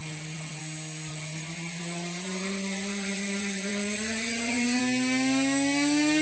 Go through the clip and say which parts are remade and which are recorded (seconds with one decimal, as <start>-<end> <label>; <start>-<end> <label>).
0.0-0.6 remade; 0.6-1.1 recorded; 1.1-4.8 remade; 4.8-6.2 recorded